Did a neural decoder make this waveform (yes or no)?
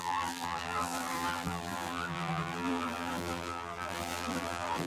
yes